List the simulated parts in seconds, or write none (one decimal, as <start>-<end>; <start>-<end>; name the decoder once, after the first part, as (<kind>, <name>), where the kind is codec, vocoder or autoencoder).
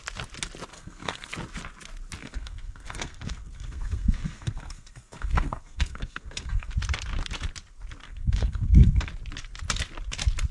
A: 0.7-1.3 (codec, SNAC); 2.2-6.7; 8.0-9.1